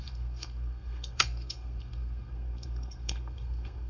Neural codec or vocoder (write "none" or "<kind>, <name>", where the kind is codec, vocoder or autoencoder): codec, SNAC